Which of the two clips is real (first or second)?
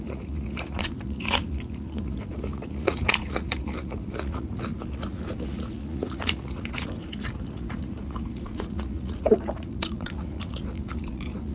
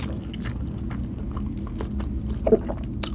second